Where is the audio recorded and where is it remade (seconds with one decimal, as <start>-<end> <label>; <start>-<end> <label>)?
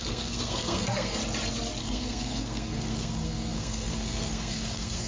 0.0-1.2 remade; 1.2-1.8 recorded; 1.8-5.1 remade